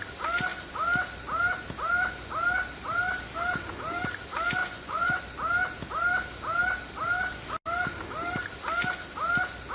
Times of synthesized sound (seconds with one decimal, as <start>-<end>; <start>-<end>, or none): 4.6-5.2